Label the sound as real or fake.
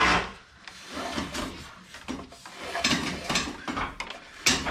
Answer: real